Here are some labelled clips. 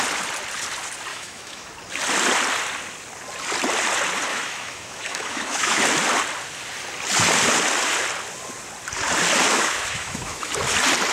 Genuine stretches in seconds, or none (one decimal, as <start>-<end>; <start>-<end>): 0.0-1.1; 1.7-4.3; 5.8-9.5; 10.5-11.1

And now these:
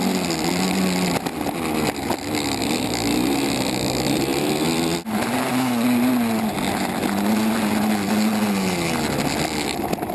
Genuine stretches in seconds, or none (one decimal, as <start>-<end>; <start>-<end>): 0.0-10.1

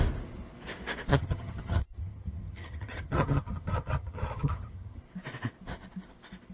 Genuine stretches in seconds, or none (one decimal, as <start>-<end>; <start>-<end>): 0.0-1.1; 5.0-6.5